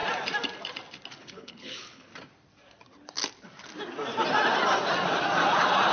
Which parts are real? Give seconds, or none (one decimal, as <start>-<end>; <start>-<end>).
0.0-1.2; 2.1-5.9